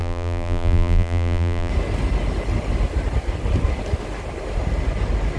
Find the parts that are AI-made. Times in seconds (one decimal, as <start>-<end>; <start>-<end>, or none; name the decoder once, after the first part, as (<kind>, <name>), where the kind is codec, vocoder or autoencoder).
0.0-1.7 (vocoder, BigVGAN v2)

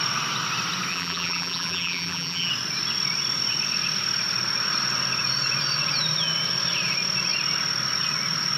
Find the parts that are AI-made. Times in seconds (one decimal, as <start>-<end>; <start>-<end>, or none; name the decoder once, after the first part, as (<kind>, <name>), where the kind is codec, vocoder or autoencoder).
0.9-2.5 (vocoder, BigVGAN v2)

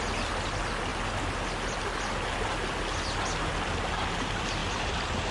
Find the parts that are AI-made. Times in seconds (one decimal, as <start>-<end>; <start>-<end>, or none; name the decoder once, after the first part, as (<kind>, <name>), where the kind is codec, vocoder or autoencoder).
none

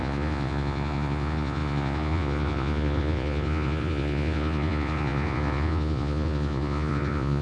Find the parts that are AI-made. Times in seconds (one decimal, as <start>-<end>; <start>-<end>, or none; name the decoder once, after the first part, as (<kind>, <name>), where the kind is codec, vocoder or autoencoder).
0.0-7.4 (vocoder, Vocos)

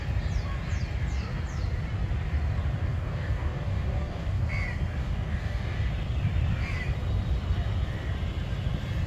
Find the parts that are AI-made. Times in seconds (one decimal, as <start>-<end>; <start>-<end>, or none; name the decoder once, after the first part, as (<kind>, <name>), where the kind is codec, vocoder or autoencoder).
2.8-4.4 (codec, DAC); 5.0-5.9

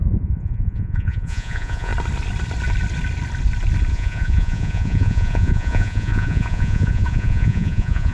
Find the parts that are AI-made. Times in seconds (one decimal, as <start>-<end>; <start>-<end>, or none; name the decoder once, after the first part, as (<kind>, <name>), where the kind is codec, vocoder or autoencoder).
0.0-1.9 (vocoder, Vocos); 3.9-8.1